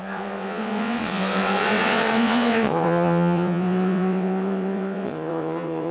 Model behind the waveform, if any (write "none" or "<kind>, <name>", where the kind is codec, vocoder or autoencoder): vocoder, WaveNeXt